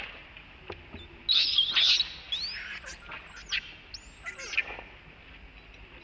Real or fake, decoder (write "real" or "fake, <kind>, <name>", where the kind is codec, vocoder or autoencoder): real